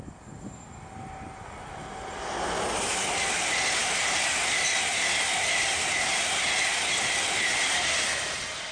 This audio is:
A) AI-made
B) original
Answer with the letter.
B